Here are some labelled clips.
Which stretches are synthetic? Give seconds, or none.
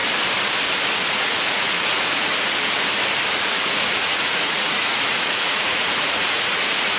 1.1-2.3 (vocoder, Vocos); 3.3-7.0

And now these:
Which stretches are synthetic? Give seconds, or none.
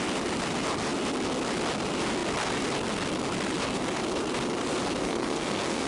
5.0-5.9 (codec, SNAC)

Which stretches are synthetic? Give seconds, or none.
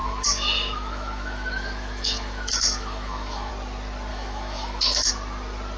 0.0-3.5 (autoencoder, DAC-VAE); 4.1-5.1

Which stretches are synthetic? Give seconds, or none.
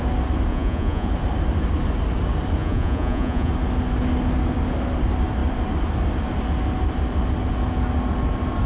0.5-1.1 (vocoder, Vocos); 2.6-3.5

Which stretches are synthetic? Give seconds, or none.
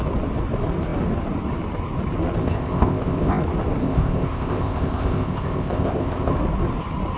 2.4-3.4 (codec, ZipCodec); 3.8-6.3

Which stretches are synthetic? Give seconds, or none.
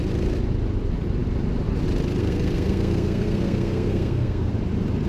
2.2-4.5 (codec, SNAC)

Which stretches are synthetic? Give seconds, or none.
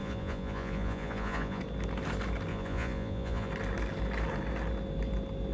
0.0-1.6 (vocoder, Vocos); 2.5-3.5